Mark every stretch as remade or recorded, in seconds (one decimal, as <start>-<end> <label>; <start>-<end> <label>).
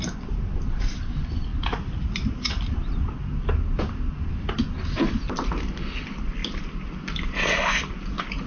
0.0-8.5 recorded